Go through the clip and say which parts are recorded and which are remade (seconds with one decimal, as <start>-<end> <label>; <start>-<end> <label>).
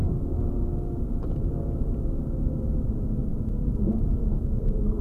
0.0-2.8 recorded; 2.8-5.0 remade